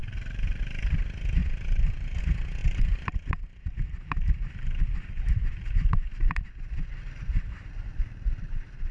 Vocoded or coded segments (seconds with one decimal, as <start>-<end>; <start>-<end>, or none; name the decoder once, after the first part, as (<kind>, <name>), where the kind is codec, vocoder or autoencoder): 0.0-0.6 (vocoder, BigVGAN v2); 1.4-2.2; 2.6-6.5